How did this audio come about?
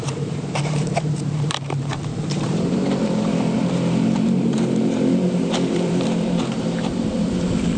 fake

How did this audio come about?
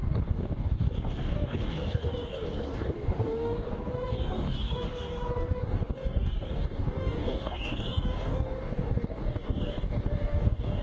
fake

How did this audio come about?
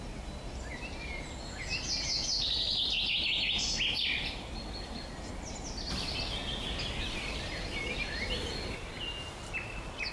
real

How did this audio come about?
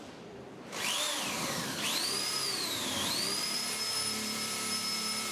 fake